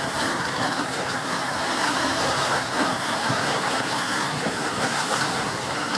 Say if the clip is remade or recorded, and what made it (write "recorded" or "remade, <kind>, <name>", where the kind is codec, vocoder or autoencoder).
remade, codec, SNAC